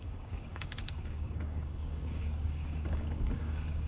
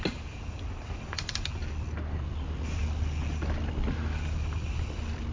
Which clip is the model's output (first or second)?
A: first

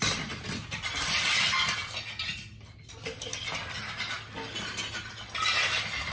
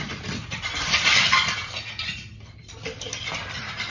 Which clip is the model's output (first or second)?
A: second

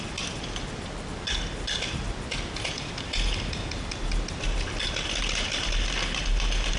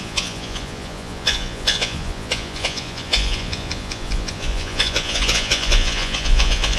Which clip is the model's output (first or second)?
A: second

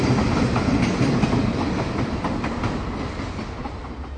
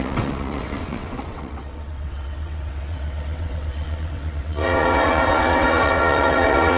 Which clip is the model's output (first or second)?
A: second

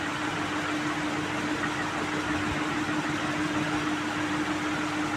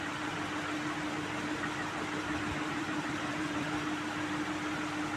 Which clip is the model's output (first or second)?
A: second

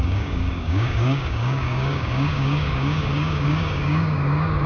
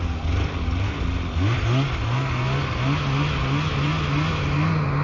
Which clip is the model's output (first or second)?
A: first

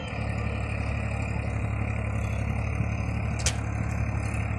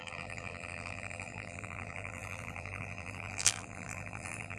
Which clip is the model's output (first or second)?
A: second